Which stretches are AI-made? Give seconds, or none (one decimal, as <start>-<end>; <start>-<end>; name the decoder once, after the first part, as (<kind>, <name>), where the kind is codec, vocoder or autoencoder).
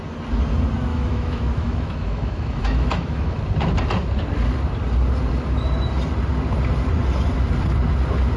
0.9-3.4 (autoencoder, DAC-VAE)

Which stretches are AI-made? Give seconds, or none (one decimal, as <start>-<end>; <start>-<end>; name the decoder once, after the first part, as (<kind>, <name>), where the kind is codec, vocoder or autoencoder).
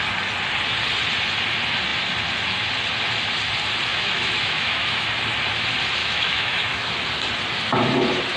3.9-5.1 (autoencoder, DAC-VAE); 6.0-6.9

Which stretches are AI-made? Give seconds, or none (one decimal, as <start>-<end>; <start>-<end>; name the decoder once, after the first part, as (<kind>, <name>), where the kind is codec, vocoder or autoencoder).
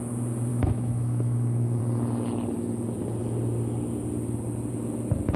0.5-1.8 (autoencoder, DAC-VAE)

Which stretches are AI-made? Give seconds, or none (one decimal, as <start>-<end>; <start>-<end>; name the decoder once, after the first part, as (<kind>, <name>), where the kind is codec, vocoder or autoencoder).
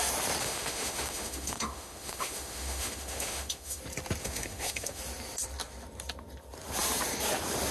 0.4-3.8 (autoencoder, DAC-VAE); 4.2-5.0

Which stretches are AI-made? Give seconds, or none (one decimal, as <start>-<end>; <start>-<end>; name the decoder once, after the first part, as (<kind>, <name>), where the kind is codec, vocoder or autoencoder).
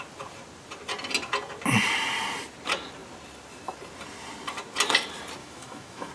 5.4-6.1 (autoencoder, DAC-VAE)